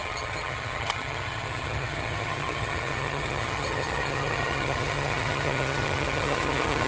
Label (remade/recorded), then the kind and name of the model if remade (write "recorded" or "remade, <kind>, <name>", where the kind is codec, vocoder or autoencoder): remade, vocoder, HiFi-GAN